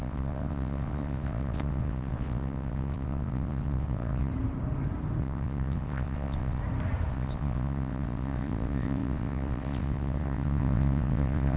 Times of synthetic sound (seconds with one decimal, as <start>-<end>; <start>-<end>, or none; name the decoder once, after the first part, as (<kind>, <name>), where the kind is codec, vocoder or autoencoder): 0.0-4.3 (vocoder, WaveNeXt); 5.2-6.6; 7.1-11.6